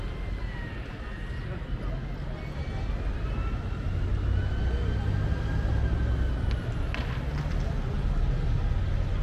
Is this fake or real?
real